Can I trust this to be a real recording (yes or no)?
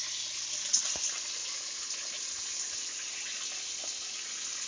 yes